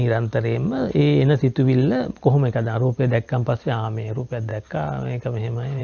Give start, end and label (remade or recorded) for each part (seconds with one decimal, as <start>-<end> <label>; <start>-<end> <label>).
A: 0.0-5.8 recorded

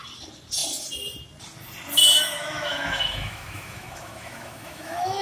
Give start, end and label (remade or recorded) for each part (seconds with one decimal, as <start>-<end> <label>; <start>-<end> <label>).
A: 0.0-2.0 recorded; 2.0-5.2 remade

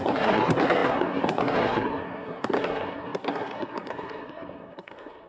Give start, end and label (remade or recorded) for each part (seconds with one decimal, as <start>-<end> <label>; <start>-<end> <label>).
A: 0.0-5.3 remade

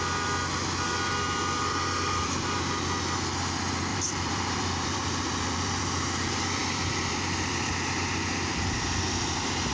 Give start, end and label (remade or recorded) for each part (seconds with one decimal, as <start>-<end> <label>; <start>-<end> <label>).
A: 0.0-3.9 recorded; 3.9-7.5 remade; 7.5-9.7 recorded

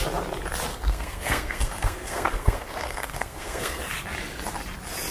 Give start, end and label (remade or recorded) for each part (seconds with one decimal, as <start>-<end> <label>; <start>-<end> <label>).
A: 0.0-0.7 recorded; 0.7-3.8 remade; 3.8-5.1 recorded

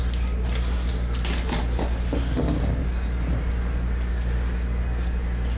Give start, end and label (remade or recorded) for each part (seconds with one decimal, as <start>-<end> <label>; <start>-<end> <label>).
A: 0.0-5.6 recorded

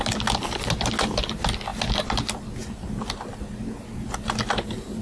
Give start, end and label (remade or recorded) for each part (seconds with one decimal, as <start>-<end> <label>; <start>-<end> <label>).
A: 0.0-5.0 recorded

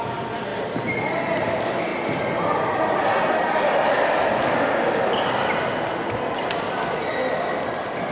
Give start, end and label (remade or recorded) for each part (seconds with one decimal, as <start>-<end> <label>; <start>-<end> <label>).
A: 0.0-8.1 recorded